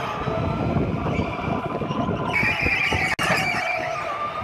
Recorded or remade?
recorded